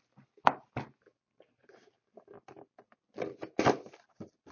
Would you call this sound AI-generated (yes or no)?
yes